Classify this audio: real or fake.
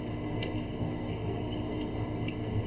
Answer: fake